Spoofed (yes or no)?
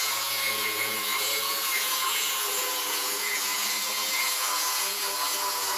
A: yes